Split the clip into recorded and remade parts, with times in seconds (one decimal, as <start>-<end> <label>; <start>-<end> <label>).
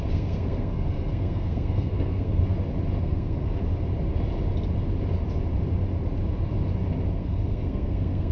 0.0-2.4 remade; 2.4-3.0 recorded; 3.0-3.6 remade; 3.6-7.1 recorded; 7.1-8.3 remade